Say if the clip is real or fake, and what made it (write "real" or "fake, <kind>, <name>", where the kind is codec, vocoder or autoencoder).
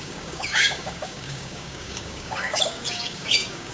fake, codec, DAC